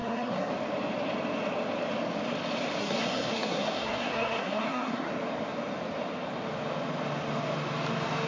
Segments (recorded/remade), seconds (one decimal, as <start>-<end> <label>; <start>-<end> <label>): 0.0-0.5 remade; 0.5-2.8 recorded; 2.8-5.1 remade; 5.1-8.3 recorded